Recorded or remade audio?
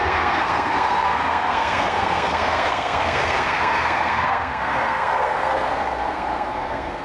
remade